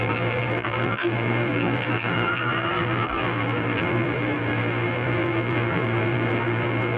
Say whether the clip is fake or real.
fake